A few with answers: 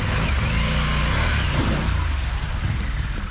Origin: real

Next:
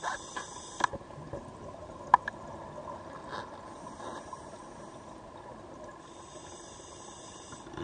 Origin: real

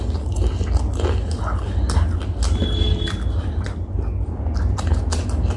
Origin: real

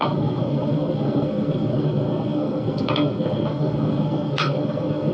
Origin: fake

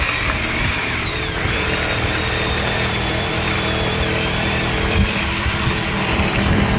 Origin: fake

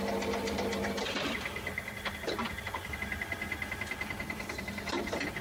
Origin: real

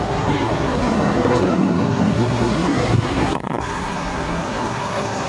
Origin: fake